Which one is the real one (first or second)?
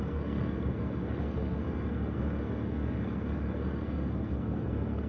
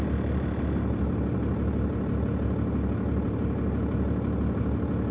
second